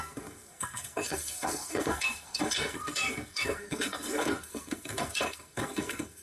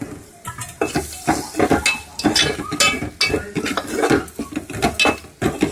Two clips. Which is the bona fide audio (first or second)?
second